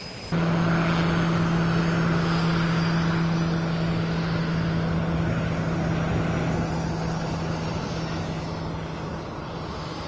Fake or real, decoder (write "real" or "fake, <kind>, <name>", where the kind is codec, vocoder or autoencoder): real